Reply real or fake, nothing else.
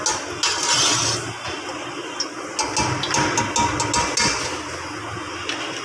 real